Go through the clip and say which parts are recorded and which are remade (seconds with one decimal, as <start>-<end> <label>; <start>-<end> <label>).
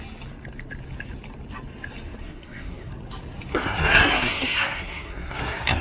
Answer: 0.0-2.2 recorded; 2.2-2.9 remade; 2.9-3.5 recorded; 3.5-5.8 remade